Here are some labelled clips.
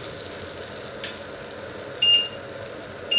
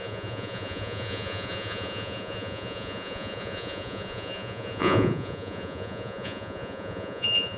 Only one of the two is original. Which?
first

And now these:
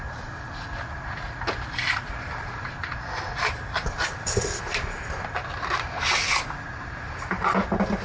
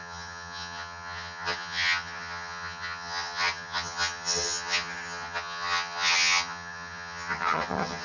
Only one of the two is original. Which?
first